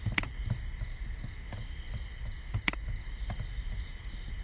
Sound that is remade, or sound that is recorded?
recorded